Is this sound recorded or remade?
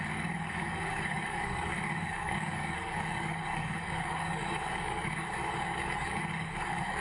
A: remade